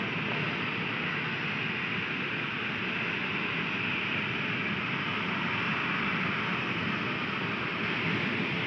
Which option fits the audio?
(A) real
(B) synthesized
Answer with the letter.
A